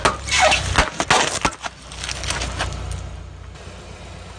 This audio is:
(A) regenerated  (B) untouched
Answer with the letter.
B